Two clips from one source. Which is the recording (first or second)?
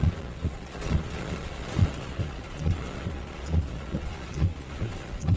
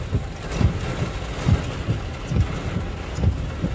second